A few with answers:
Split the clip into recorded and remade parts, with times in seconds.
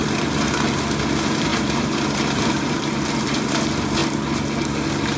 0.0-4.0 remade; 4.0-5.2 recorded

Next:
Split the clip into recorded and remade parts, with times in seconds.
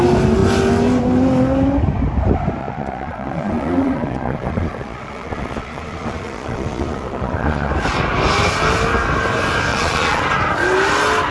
0.0-2.6 recorded; 2.6-7.7 remade; 7.7-9.7 recorded; 9.7-10.2 remade; 10.2-11.3 recorded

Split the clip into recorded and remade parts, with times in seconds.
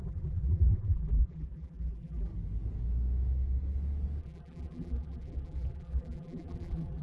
0.0-2.3 remade; 2.3-4.2 recorded; 4.2-7.0 remade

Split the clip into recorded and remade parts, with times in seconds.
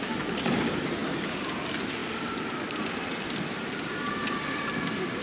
0.0-5.2 remade